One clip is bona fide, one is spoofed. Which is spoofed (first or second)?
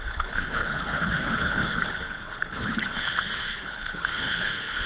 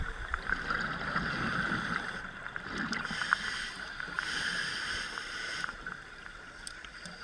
first